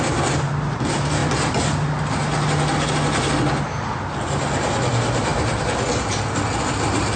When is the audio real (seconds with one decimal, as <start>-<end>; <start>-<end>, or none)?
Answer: 0.0-7.2